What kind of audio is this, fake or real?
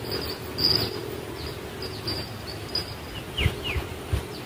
real